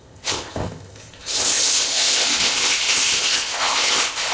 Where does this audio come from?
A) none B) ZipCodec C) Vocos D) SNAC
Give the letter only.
B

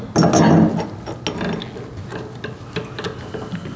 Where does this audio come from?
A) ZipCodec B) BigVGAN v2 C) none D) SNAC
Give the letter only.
C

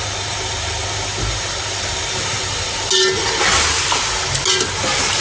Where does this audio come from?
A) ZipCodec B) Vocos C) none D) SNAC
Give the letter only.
C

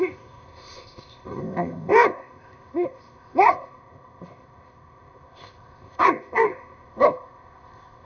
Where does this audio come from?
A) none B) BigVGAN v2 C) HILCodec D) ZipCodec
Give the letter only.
D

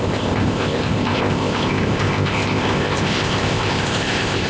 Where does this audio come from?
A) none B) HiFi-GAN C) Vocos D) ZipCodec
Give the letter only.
D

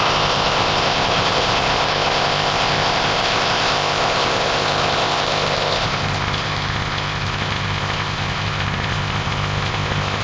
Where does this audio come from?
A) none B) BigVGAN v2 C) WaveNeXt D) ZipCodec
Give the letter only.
D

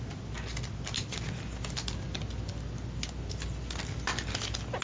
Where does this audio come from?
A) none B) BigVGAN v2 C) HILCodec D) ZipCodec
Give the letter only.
A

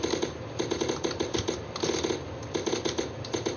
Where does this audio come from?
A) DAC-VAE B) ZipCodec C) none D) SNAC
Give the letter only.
C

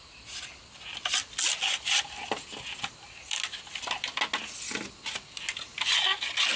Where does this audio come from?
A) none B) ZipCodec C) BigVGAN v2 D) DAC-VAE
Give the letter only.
A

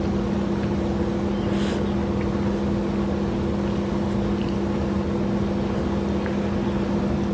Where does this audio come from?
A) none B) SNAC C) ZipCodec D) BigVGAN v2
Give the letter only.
A